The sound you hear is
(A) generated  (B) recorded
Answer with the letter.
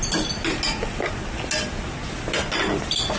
B